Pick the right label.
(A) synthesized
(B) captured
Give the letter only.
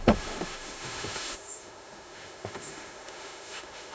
A